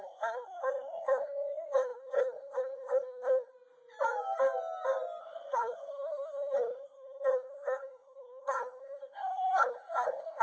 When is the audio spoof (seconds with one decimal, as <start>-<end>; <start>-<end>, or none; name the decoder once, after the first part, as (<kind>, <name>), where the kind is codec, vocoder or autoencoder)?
0.0-3.5 (codec, SNAC); 5.2-10.4